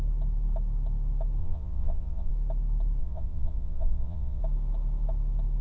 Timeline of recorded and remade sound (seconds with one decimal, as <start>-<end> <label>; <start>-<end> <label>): 0.0-1.4 recorded; 1.4-2.3 remade; 2.3-3.0 recorded; 3.0-4.4 remade; 4.4-5.6 recorded